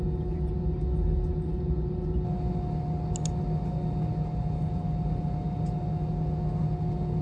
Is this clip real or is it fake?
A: real